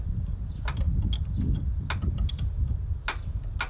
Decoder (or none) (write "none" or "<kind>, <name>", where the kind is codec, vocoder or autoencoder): none